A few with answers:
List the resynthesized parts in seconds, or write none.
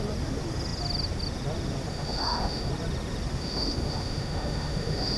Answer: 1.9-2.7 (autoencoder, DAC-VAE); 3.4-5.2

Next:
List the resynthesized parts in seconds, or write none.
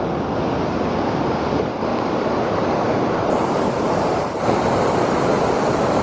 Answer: 1.9-5.5 (vocoder, BigVGAN v2)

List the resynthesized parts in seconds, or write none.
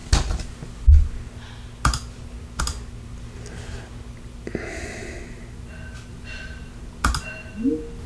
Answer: none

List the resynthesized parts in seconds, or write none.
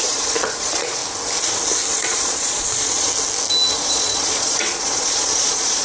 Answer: 0.0-1.0 (vocoder, Vocos); 1.9-3.1; 3.7-5.8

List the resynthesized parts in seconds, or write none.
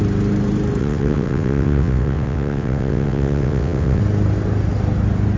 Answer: 0.8-4.0 (vocoder, WaveNeXt)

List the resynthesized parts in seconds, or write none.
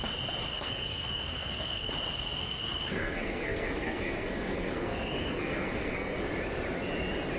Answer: 0.5-1.9 (codec, SNAC); 2.4-6.2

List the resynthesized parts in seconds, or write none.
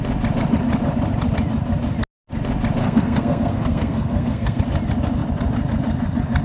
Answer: 2.8-4.6 (codec, SNAC)